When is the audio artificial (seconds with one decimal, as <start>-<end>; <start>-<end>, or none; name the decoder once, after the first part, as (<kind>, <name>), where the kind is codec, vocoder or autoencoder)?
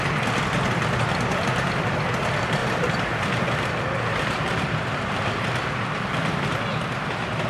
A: 2.6-6.5 (vocoder, BigVGAN v2)